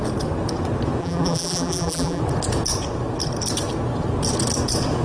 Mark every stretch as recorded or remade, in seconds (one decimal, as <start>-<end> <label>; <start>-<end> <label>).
0.0-1.0 recorded; 1.0-2.2 remade; 2.2-5.0 recorded